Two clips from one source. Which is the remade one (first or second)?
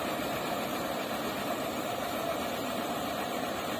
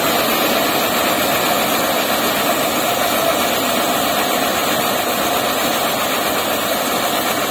first